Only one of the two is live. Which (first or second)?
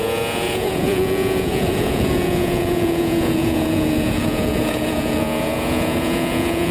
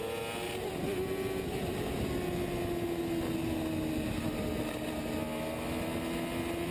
second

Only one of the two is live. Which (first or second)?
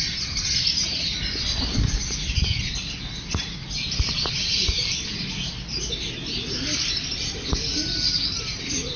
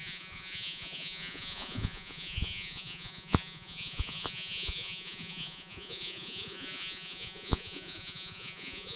first